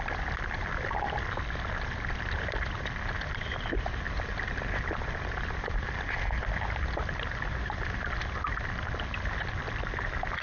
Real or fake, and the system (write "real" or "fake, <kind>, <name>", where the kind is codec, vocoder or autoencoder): real